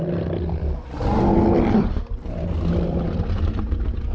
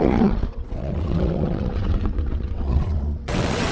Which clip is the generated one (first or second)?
second